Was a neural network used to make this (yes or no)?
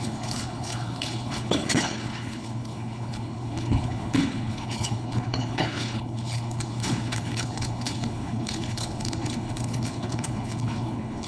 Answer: yes